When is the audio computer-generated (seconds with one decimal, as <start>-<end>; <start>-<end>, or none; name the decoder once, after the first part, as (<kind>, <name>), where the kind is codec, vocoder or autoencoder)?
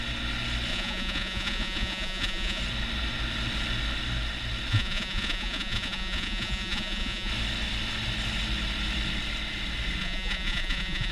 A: 0.7-2.6 (vocoder, Vocos); 4.7-7.3; 10.0-11.1